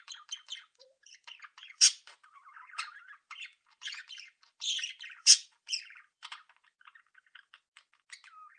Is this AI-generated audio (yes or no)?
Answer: yes